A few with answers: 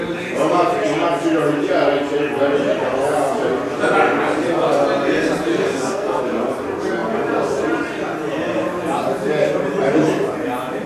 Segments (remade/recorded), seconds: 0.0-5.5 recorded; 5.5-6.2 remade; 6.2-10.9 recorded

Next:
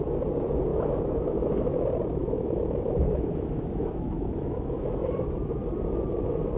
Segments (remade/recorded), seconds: 0.0-0.7 recorded; 0.7-1.8 remade; 1.8-2.2 recorded; 2.2-4.9 remade; 4.9-6.6 recorded

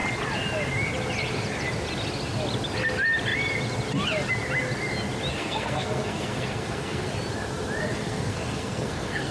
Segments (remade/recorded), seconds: 0.0-5.3 recorded; 5.3-7.1 remade; 7.1-7.8 recorded; 7.8-9.3 remade

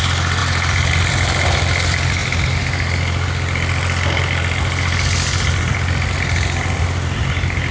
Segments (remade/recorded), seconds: 0.0-7.7 recorded

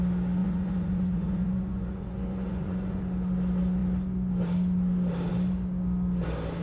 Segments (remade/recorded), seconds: 0.0-0.4 recorded; 0.4-3.0 remade; 3.0-6.6 recorded

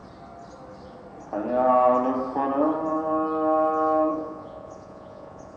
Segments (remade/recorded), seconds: 0.0-4.1 recorded; 4.1-5.6 remade

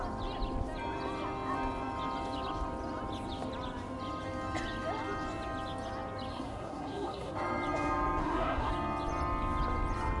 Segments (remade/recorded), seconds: 0.0-6.3 recorded; 6.3-7.3 remade; 7.3-8.2 recorded; 8.2-8.7 remade; 8.7-10.2 recorded